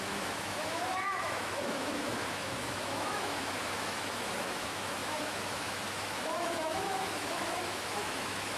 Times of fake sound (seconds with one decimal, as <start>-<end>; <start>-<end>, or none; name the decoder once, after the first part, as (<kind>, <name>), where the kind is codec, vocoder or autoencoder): 0.0-8.6 (autoencoder, DAC-VAE)